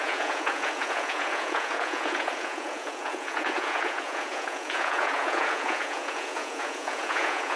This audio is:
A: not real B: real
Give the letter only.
A